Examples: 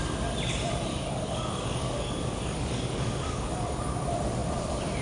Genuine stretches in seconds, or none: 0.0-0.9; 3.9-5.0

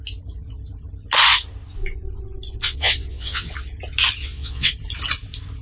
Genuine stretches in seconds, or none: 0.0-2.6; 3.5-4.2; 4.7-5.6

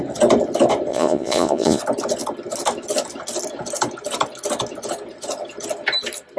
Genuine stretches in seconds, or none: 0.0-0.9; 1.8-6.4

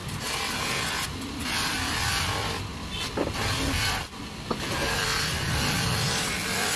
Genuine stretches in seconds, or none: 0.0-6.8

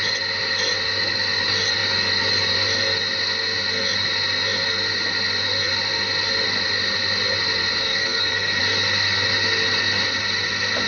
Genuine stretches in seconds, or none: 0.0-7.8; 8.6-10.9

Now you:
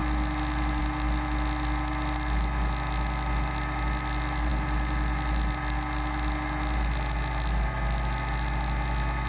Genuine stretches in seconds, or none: 0.0-9.3

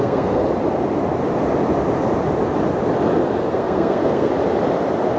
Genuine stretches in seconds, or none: 0.4-3.5; 4.3-5.2